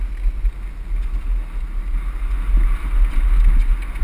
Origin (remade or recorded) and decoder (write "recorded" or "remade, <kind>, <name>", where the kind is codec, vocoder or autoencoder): recorded